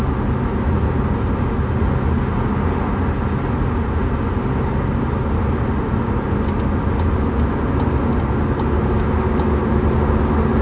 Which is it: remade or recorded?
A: recorded